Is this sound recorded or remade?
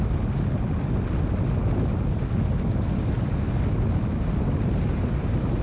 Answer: recorded